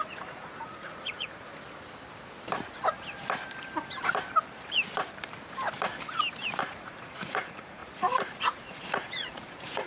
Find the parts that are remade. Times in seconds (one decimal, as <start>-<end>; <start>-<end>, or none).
0.0-1.5; 6.6-9.9